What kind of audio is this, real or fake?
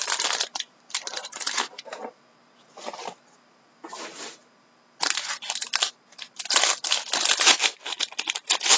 real